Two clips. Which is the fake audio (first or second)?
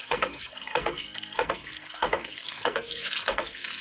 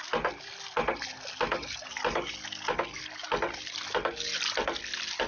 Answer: first